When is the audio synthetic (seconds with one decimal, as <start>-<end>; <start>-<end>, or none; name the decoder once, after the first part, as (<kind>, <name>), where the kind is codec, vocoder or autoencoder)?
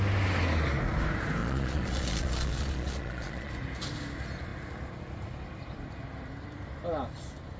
1.4-3.5 (vocoder, Vocos)